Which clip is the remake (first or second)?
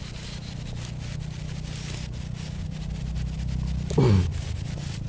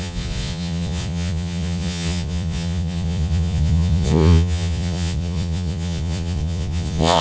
second